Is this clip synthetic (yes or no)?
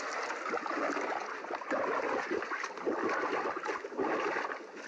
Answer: no